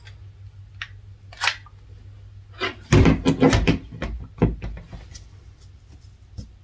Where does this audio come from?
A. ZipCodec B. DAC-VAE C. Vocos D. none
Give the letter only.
D